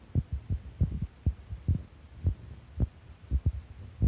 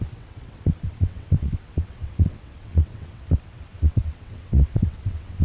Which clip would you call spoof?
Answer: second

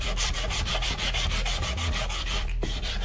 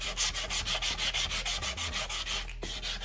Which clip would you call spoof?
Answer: first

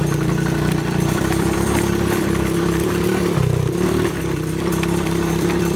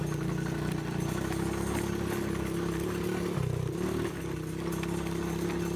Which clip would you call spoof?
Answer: first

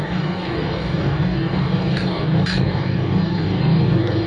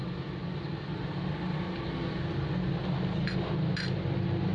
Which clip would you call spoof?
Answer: first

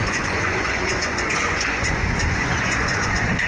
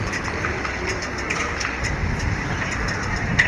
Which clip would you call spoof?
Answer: first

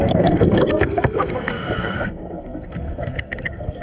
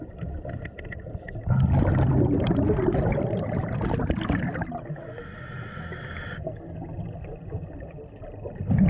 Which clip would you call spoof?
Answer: first